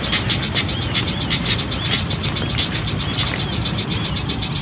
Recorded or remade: recorded